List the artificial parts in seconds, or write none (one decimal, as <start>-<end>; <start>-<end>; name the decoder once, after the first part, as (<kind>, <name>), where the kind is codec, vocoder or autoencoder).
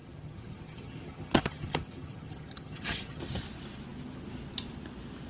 0.0-3.2 (vocoder, HiFi-GAN)